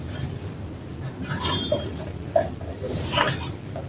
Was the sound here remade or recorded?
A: recorded